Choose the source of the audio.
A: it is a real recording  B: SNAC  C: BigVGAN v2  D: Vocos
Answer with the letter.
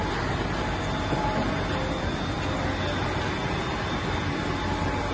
A